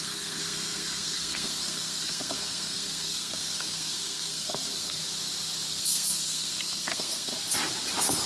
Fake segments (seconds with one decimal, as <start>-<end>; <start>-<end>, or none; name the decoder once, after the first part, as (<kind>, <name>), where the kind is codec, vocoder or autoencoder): 0.0-5.0 (codec, SNAC); 5.7-7.3